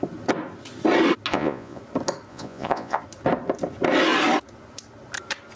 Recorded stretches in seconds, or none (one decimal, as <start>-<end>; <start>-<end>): 0.0-1.3; 1.8-2.3; 3.0-5.6